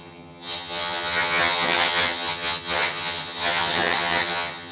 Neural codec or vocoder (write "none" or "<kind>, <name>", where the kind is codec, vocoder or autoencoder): vocoder, HiFi-GAN